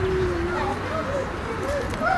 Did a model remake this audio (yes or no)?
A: no